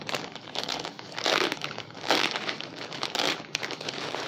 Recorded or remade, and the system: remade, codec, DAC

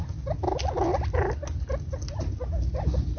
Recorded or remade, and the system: recorded